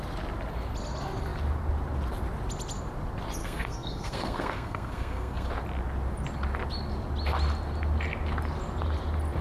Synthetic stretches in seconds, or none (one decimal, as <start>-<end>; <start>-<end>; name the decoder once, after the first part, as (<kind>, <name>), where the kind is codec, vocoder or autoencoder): 3.4-5.5 (codec, SNAC)